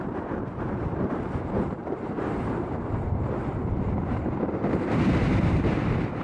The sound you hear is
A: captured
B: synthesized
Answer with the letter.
B